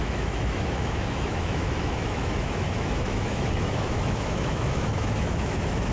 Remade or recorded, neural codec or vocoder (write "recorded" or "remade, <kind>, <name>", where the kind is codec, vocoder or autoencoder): remade, autoencoder, DAC-VAE